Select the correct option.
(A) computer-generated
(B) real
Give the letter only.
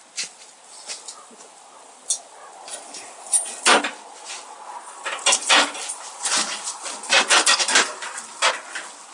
B